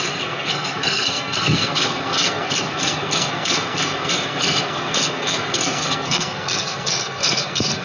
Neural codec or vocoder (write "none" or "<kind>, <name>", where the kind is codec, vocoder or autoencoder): codec, SNAC